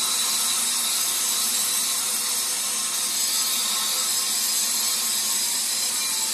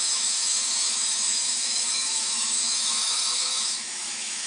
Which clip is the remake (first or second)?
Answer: second